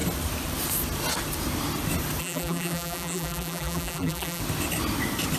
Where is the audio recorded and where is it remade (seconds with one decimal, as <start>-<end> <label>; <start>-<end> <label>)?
0.0-2.2 recorded; 2.2-4.4 remade; 4.4-5.4 recorded